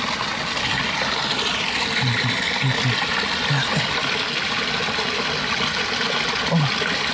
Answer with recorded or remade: recorded